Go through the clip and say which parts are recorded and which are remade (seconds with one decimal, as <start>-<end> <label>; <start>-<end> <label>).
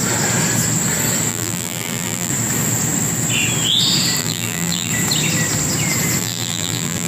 0.0-1.3 recorded; 1.3-2.3 remade; 2.3-4.2 recorded; 4.2-4.9 remade; 4.9-6.2 recorded; 6.2-7.1 remade